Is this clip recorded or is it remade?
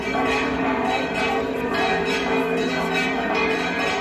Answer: remade